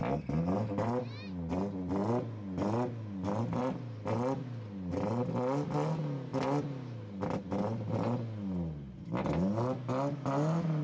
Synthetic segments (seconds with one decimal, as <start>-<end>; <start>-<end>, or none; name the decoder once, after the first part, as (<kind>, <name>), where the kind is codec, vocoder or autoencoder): none